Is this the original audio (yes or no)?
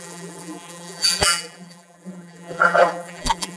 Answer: no